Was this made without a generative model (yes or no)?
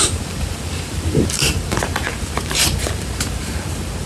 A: no